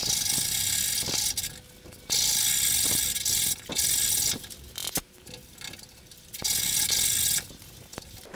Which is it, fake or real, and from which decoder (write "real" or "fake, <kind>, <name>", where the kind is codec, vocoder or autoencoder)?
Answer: real